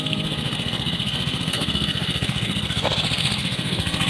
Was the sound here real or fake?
fake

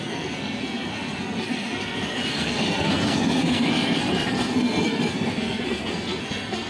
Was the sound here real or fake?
fake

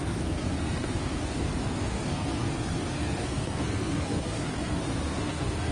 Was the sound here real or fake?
fake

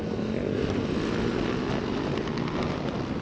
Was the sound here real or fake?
real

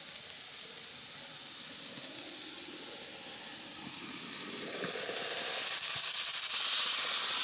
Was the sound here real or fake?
real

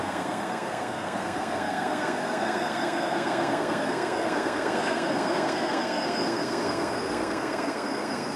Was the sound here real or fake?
fake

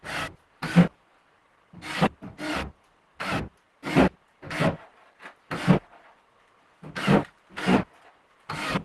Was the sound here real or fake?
real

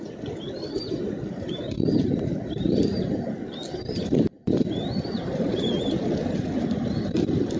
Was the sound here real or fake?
real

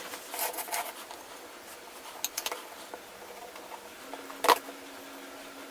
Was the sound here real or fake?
real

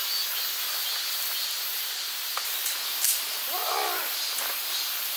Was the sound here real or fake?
real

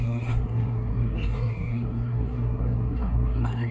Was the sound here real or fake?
fake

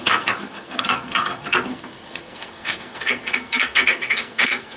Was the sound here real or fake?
fake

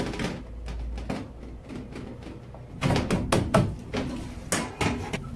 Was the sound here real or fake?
real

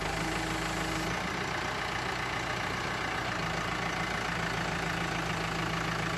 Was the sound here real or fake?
real